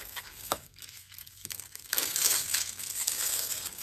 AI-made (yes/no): yes